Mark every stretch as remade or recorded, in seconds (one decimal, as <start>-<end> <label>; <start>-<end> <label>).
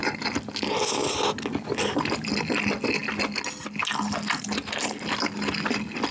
0.0-6.1 recorded